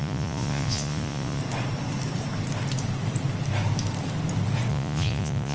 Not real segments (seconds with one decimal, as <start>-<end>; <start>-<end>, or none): 0.0-1.4; 4.7-5.5